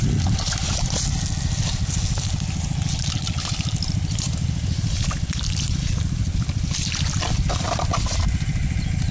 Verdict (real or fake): real